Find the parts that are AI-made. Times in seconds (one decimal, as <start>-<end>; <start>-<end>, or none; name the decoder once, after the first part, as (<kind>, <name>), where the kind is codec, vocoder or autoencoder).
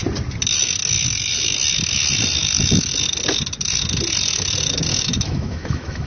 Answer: 4.9-6.1 (autoencoder, DAC-VAE)